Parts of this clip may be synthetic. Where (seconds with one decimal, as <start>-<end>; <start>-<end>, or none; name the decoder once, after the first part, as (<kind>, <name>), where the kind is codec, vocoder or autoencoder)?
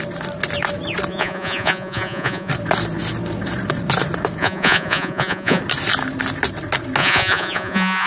1.1-2.5 (vocoder, Vocos); 4.4-5.6; 7.0-8.1